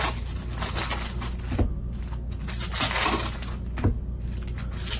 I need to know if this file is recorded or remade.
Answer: recorded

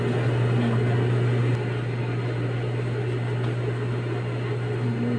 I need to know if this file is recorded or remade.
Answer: recorded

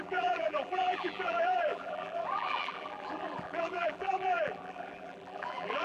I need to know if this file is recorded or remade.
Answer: remade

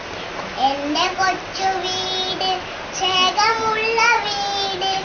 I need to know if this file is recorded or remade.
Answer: recorded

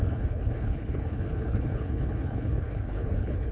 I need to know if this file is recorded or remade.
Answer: remade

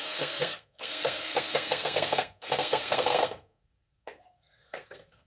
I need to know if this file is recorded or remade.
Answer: remade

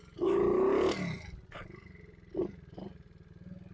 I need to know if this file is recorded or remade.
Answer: recorded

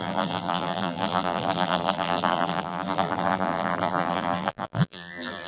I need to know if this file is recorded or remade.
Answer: remade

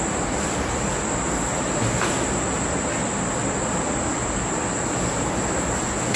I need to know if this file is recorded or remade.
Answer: recorded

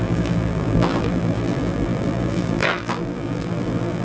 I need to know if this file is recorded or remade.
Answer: remade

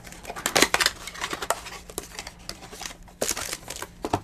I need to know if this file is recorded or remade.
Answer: recorded